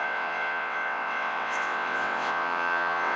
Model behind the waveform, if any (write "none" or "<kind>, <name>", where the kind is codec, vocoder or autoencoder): vocoder, WaveNeXt